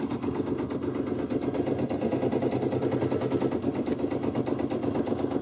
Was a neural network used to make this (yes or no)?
no